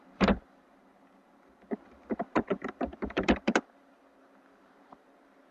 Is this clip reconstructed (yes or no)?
yes